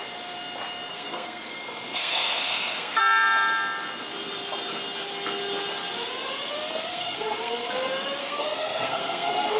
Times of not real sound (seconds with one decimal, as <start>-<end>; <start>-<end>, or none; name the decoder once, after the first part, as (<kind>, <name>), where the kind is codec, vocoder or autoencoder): 0.9-3.0 (codec, SNAC); 6.9-7.7; 8.2-9.6